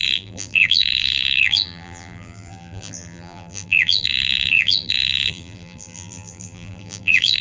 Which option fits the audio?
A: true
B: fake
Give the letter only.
B